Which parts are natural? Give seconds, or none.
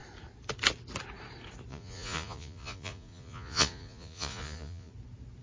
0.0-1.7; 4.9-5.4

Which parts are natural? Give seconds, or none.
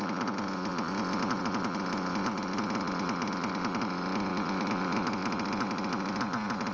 0.0-6.7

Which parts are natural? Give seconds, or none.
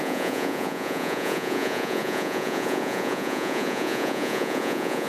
none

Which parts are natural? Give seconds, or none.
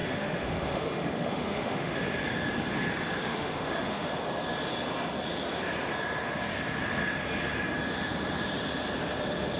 2.0-3.2; 4.1-9.6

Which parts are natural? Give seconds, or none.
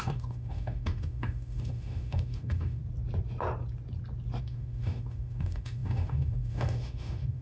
2.8-4.4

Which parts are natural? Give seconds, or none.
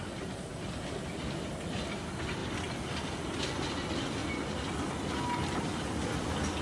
0.0-6.6